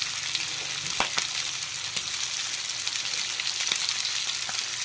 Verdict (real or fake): real